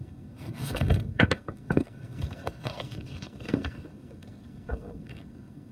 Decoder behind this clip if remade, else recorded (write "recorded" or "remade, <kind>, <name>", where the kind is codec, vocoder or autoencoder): remade, codec, SNAC